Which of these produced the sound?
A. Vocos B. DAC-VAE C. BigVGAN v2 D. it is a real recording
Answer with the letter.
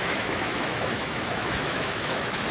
B